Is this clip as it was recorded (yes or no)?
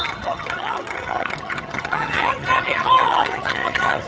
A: no